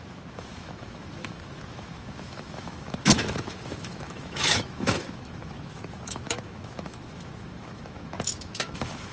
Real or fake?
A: fake